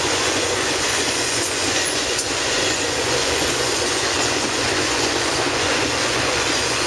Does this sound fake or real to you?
fake